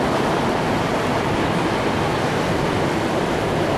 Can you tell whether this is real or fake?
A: real